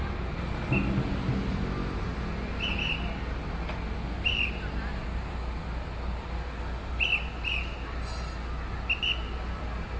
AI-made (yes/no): no